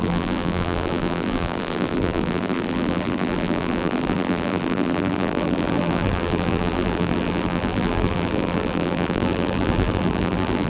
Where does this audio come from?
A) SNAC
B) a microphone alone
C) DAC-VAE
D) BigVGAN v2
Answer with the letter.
D